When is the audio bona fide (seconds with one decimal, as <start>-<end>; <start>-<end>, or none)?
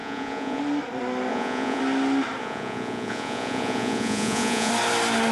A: 0.6-1.3; 1.8-2.4; 4.7-5.3